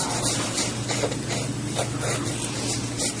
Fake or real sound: real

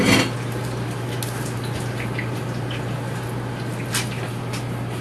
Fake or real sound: real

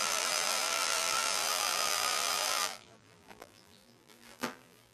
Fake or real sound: fake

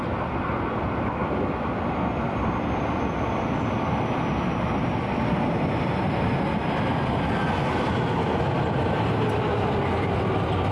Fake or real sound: real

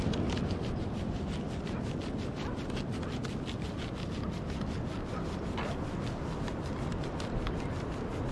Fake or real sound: real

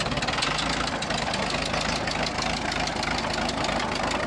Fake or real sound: real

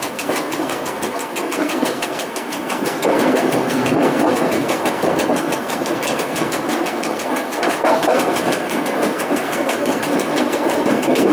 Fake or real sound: fake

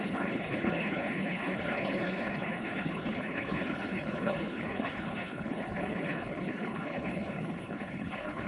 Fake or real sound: fake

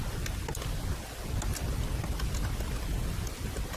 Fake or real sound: real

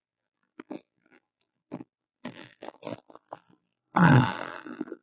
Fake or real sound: fake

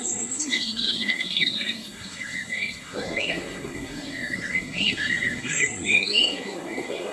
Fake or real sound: fake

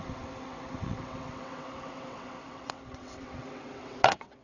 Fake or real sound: fake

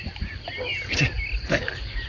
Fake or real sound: real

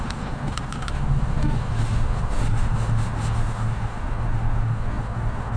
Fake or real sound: fake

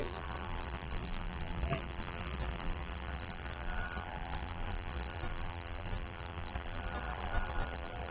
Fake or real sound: fake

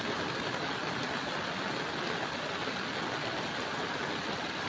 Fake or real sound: real